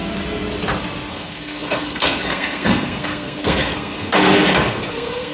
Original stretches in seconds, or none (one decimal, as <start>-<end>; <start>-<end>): 0.0-1.1